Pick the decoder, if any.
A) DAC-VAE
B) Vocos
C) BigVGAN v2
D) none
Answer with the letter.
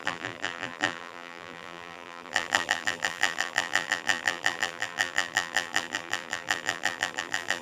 C